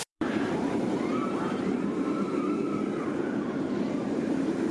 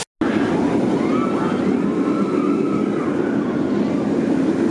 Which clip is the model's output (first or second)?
first